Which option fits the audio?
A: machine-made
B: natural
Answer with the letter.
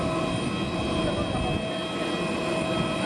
B